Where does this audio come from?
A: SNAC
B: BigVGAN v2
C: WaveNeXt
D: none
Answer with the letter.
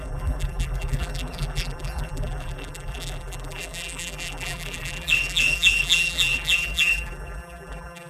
B